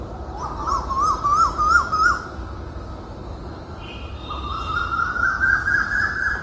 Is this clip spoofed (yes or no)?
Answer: no